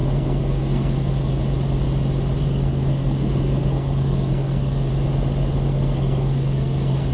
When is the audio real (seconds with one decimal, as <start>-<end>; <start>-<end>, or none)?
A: 1.4-2.4; 4.9-5.7